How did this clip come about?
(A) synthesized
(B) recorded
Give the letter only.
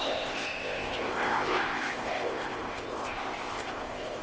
A